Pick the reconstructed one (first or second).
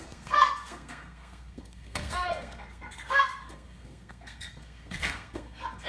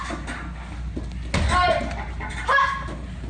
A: first